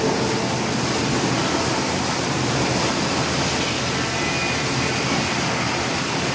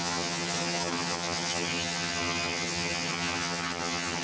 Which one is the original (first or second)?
first